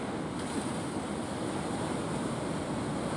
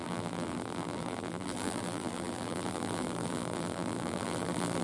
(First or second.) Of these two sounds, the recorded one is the first